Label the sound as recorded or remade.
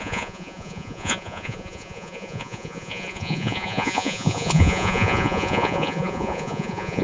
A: remade